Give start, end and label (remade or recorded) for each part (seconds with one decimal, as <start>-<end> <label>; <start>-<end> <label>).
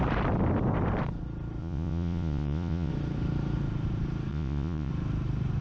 0.0-1.6 recorded; 1.6-2.9 remade; 2.9-4.3 recorded; 4.3-4.9 remade; 4.9-5.6 recorded